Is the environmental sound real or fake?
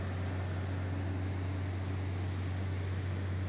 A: real